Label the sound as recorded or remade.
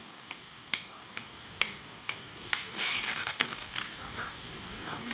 remade